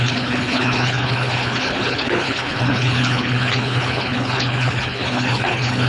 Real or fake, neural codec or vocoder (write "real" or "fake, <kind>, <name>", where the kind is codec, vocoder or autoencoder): fake, codec, HILCodec